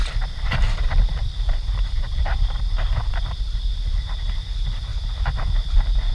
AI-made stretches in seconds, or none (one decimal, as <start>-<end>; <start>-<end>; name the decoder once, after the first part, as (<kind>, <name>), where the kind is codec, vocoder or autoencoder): 0.0-3.7 (vocoder, BigVGAN v2)

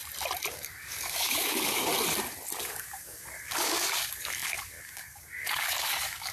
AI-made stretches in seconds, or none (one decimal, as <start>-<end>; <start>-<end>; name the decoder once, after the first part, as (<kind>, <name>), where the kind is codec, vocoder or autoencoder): 0.5-1.9 (codec, DAC); 2.6-6.3

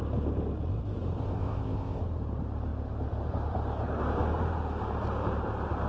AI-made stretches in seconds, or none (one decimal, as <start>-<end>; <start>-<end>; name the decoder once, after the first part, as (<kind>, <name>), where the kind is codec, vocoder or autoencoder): 1.2-2.0 (codec, ZipCodec)

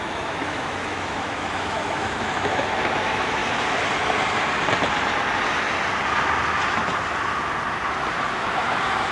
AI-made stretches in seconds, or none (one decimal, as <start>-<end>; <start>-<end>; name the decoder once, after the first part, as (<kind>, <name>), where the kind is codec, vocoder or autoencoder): 0.0-3.4 (autoencoder, DAC-VAE); 8.3-9.1